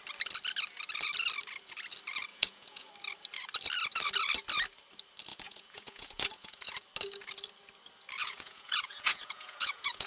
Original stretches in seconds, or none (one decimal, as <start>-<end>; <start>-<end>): 0.0-2.3; 2.9-5.3; 6.8-8.2